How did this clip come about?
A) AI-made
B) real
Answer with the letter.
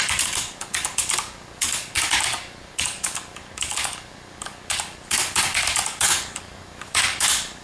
A